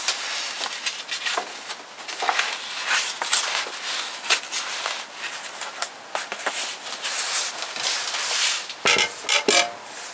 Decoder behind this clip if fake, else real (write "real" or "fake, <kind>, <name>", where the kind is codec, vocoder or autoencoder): real